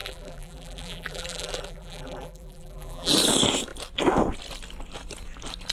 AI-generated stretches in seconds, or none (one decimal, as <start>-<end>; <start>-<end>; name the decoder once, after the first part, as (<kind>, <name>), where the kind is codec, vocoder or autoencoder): 0.0-3.1 (vocoder, BigVGAN v2)